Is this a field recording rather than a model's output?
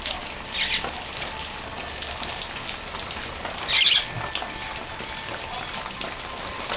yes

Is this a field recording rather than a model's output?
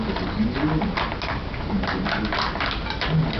yes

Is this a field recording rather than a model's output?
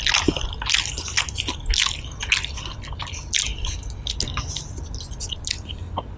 yes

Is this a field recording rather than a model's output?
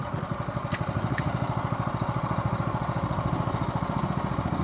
yes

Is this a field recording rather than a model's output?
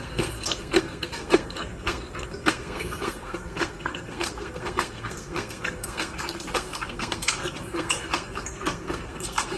no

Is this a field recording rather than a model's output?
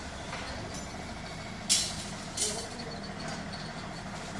yes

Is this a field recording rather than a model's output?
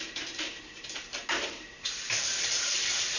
no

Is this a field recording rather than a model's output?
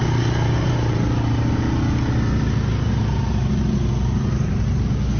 yes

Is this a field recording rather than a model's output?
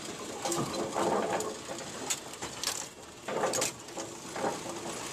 yes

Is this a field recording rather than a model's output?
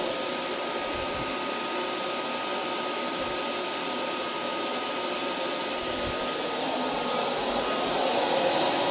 yes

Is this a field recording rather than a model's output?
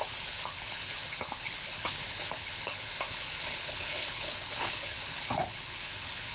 no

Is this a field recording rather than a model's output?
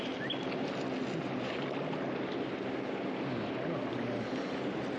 yes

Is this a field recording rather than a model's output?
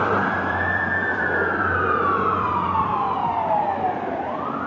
no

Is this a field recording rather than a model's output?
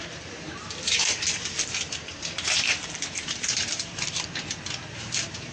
no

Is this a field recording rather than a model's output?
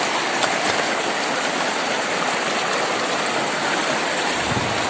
yes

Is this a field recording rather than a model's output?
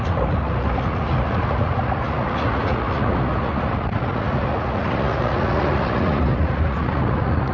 no